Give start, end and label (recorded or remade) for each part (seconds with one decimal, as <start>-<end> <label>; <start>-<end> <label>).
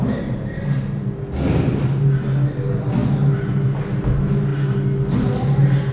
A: 0.0-5.9 recorded